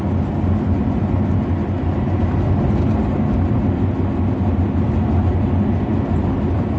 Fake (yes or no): no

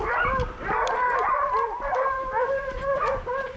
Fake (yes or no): yes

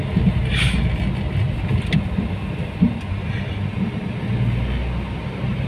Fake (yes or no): no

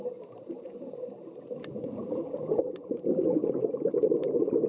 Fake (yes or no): yes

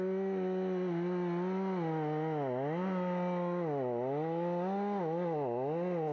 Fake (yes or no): no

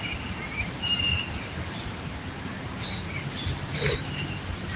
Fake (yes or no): yes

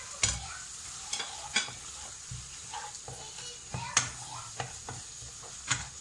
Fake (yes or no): no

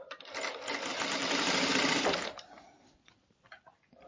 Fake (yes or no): yes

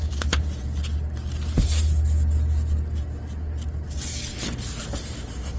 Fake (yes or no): no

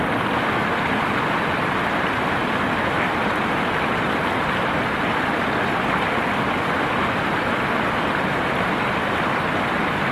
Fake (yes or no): no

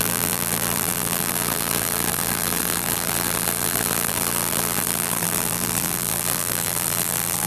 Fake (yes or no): yes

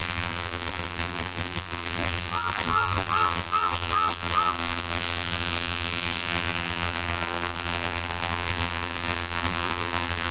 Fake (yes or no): yes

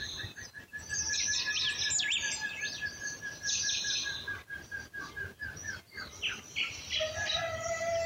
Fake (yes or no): no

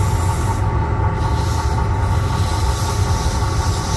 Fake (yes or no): no